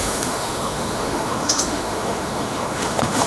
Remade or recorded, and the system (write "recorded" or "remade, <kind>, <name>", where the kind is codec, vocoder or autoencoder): remade, autoencoder, DAC-VAE